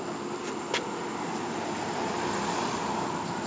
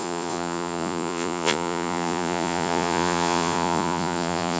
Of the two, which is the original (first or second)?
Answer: first